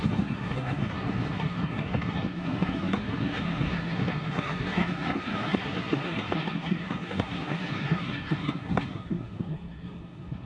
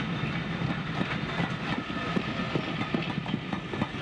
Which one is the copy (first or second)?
first